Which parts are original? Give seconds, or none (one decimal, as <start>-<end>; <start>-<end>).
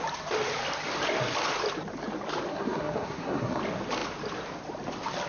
0.0-2.5; 3.6-5.3